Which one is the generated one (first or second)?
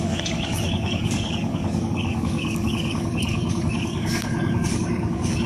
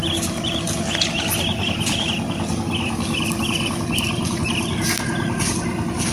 first